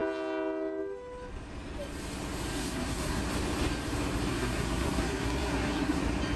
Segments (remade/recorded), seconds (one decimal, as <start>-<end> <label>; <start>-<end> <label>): 0.0-2.5 recorded; 2.5-3.2 remade; 3.2-4.3 recorded; 4.3-6.0 remade; 6.0-6.4 recorded

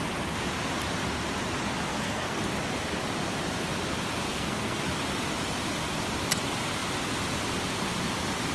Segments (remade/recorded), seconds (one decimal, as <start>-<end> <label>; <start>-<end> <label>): 0.0-1.9 recorded; 1.9-2.4 remade; 2.4-4.3 recorded; 4.3-4.8 remade; 4.8-8.5 recorded